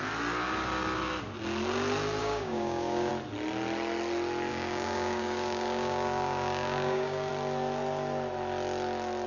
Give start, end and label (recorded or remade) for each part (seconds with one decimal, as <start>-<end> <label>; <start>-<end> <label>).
0.0-2.2 recorded; 2.2-3.1 remade; 3.1-4.5 recorded; 4.5-7.3 remade; 7.3-9.3 recorded